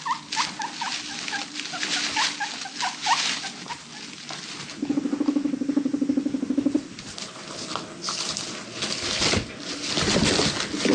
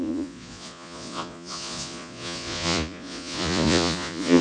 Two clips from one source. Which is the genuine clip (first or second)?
first